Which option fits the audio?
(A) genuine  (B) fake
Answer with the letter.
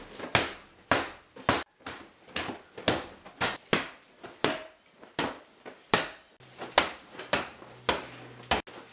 A